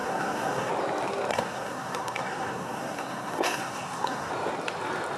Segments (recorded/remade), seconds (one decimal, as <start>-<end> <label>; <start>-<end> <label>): 0.0-0.7 remade; 0.7-1.3 recorded; 1.3-4.3 remade; 4.3-5.2 recorded